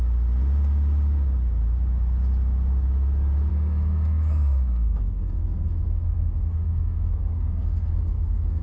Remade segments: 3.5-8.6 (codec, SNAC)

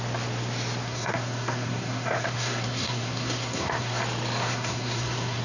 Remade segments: 0.8-4.0 (codec, SNAC); 4.4-5.4